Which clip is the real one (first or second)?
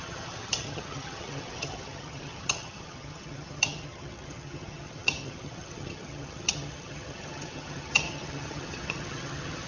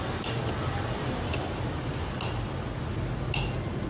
second